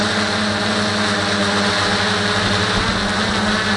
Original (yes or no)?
yes